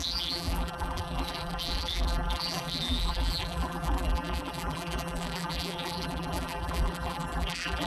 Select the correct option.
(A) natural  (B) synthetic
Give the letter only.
B